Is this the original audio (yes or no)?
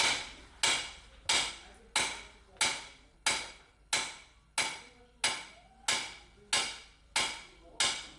yes